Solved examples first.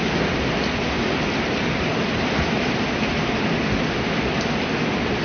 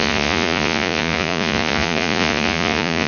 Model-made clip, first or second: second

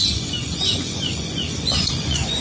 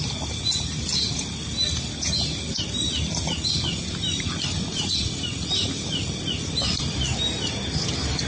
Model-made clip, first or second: first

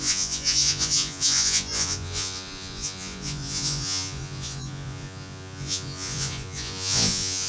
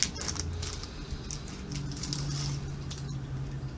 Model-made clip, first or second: first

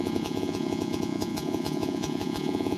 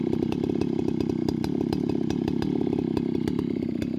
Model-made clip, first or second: first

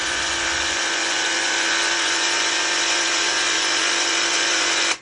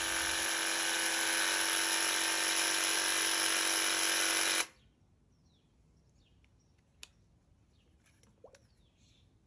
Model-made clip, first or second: first